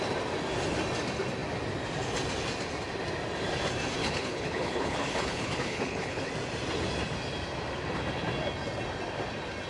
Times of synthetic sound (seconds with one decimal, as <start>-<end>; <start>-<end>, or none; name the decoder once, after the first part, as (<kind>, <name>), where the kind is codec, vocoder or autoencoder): 4.0-6.3 (codec, HILCodec)

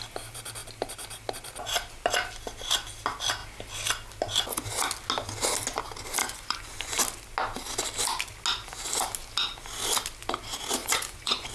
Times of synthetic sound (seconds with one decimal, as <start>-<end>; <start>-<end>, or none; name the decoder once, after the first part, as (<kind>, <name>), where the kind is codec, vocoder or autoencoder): 6.2-7.0 (vocoder, Vocos); 10.8-11.5

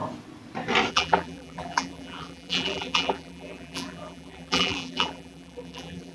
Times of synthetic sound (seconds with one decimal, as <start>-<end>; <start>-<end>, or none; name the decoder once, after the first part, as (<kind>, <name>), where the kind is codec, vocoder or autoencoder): 0.9-6.1 (vocoder, BigVGAN v2)

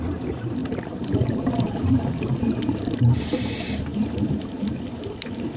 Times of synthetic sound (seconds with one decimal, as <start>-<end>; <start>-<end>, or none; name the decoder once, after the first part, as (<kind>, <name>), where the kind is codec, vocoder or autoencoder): 0.0-5.6 (vocoder, BigVGAN v2)